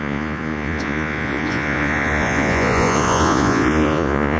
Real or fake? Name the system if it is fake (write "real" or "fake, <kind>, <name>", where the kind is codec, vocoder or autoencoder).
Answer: fake, vocoder, Vocos